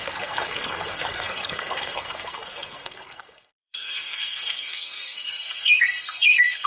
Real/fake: fake